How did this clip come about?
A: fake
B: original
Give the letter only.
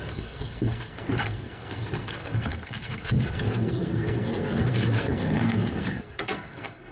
A